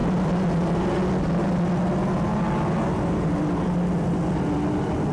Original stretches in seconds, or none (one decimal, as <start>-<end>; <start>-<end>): 0.0-5.1